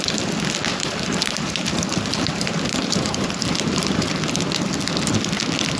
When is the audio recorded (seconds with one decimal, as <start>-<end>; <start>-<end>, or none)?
0.0-0.7; 4.2-5.8